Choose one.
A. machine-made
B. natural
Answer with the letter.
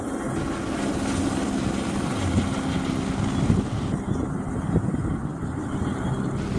B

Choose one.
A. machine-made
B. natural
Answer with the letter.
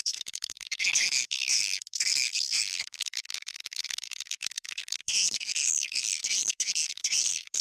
A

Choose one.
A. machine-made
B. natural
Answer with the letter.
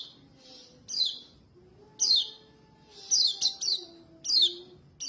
B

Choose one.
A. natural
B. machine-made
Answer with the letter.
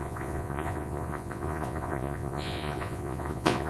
B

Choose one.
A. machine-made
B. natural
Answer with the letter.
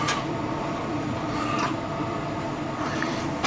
A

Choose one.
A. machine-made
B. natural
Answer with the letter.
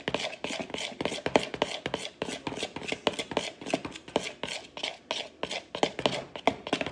B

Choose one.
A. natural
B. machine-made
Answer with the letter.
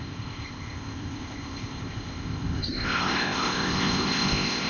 B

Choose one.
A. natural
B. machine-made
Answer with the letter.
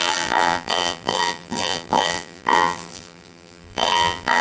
B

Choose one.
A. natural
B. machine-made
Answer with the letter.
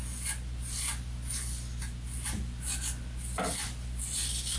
A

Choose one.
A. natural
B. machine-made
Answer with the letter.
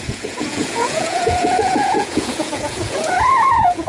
B